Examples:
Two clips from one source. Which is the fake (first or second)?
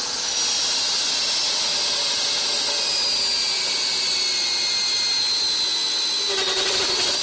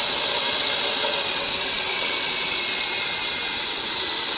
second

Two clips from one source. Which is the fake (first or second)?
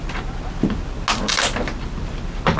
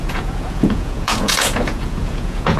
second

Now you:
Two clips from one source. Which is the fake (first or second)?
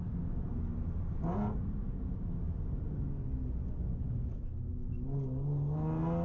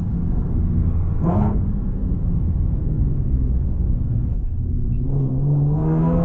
second